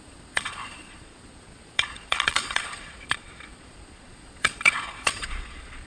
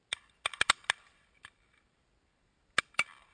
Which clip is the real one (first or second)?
second